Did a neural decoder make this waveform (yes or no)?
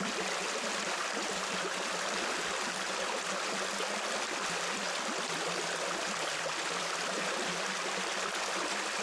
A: no